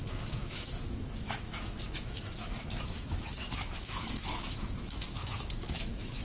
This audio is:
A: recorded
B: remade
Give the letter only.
B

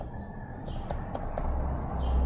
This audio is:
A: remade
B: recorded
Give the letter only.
B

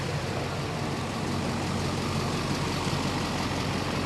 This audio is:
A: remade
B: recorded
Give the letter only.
B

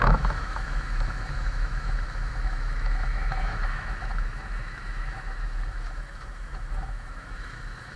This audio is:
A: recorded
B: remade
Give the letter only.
B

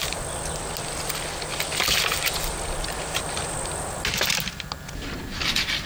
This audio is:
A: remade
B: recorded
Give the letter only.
B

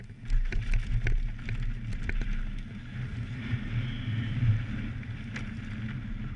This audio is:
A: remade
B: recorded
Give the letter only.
B